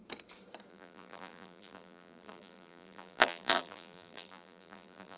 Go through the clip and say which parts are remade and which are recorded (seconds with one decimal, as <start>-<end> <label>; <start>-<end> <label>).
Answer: 0.0-0.7 recorded; 0.7-5.2 remade